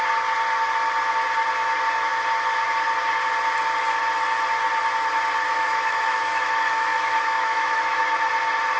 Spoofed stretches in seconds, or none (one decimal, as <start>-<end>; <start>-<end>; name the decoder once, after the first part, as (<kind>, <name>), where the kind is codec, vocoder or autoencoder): 5.5-8.0 (autoencoder, DAC-VAE)